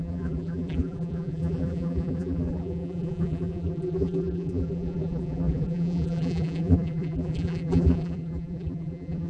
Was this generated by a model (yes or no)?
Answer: yes